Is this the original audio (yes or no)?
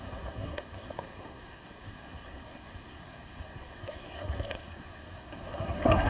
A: no